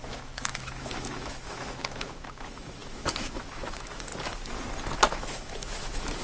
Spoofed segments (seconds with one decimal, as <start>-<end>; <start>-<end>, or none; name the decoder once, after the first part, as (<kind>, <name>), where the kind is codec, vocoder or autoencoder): 0.0-4.1 (autoencoder, DAC-VAE); 5.1-6.2